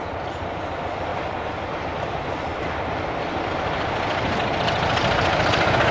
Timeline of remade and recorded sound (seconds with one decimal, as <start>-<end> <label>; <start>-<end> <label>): 0.0-1.1 recorded; 1.1-1.7 remade; 1.7-2.5 recorded; 2.5-4.5 remade; 4.5-5.9 recorded